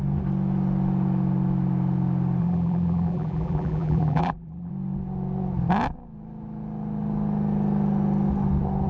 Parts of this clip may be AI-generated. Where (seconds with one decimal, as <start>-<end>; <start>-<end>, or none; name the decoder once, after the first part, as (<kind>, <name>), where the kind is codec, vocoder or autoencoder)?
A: 2.4-4.7 (vocoder, BigVGAN v2)